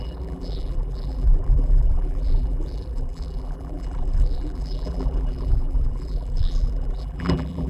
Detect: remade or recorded remade